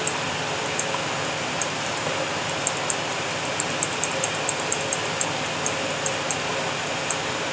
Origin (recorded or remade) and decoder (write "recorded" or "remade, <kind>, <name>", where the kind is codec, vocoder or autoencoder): recorded